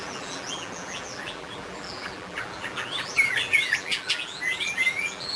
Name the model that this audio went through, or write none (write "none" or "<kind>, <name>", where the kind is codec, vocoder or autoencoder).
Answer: vocoder, BigVGAN v2